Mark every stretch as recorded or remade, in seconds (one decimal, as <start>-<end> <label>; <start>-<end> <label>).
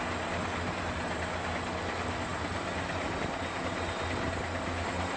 0.0-5.2 recorded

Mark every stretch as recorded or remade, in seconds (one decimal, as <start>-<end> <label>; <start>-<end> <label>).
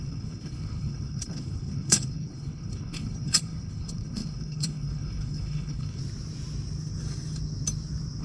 0.0-6.0 remade; 6.0-8.2 recorded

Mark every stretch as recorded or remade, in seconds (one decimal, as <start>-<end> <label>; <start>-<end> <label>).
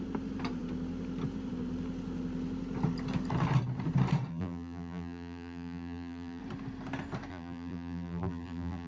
0.0-4.3 recorded; 4.3-6.4 remade; 6.4-7.3 recorded; 7.3-8.9 remade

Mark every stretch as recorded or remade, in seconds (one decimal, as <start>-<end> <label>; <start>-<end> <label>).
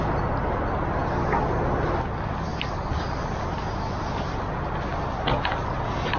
0.0-6.2 recorded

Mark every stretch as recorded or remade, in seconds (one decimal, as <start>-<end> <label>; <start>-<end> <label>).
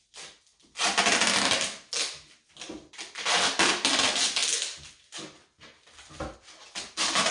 0.0-7.3 recorded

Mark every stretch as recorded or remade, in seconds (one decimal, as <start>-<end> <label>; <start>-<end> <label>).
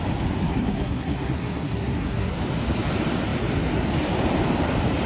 0.0-0.5 recorded; 0.5-2.4 remade; 2.4-5.1 recorded